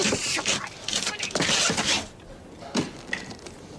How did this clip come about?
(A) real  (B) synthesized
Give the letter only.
A